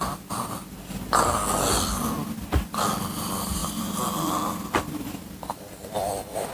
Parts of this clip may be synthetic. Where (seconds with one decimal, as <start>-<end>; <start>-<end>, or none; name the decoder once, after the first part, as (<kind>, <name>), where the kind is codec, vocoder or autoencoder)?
none